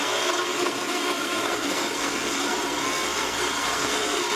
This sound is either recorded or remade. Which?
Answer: remade